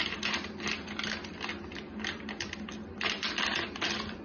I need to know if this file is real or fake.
real